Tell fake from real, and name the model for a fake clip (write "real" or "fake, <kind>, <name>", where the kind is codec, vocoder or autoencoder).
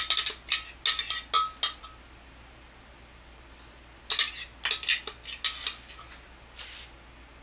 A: real